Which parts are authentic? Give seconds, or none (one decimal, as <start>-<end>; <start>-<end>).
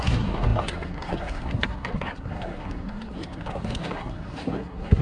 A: none